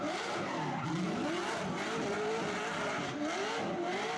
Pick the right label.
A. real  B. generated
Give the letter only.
A